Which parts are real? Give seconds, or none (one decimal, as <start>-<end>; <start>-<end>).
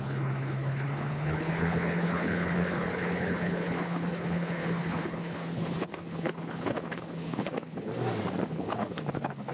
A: 7.9-8.5